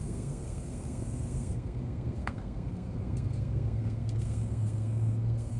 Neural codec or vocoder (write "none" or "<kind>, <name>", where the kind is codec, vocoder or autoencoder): codec, SNAC